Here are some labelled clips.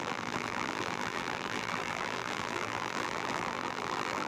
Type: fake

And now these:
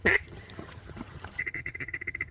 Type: fake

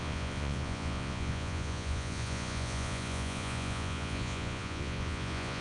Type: fake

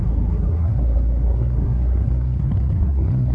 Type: fake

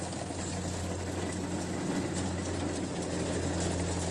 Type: real